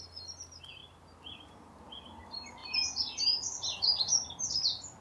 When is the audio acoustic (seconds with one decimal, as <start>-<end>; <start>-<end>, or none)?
0.0-2.6; 4.3-5.0